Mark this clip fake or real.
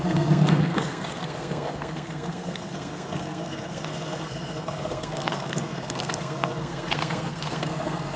fake